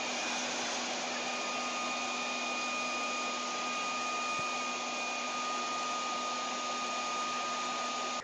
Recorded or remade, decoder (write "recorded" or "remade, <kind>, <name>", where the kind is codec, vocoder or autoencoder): recorded